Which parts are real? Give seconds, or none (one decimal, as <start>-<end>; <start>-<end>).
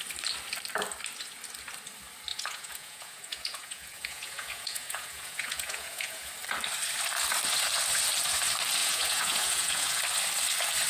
0.0-2.3; 6.3-8.8; 10.0-10.9